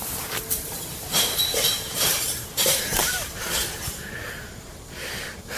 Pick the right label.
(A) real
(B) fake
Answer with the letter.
B